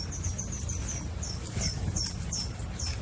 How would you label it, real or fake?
real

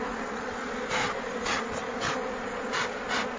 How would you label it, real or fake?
real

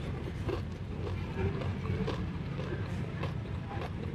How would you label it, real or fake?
fake